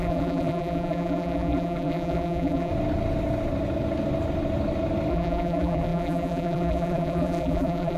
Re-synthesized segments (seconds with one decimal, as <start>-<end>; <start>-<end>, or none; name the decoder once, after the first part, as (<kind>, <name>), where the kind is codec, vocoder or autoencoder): 0.0-2.7 (vocoder, BigVGAN v2); 5.1-8.0